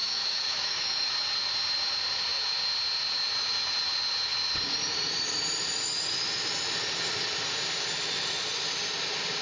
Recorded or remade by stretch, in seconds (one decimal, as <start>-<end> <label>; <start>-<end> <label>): 0.0-1.1 remade; 1.1-9.4 recorded